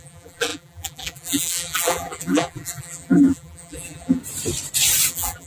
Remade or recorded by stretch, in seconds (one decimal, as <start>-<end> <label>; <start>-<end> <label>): 0.0-4.2 remade; 4.2-5.1 recorded; 5.1-5.5 remade